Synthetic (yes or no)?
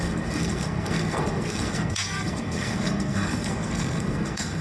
yes